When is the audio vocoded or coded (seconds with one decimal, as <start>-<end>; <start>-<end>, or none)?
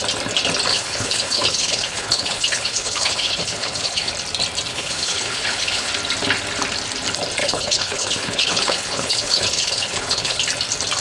0.7-4.1; 4.7-5.9; 7.4-10.4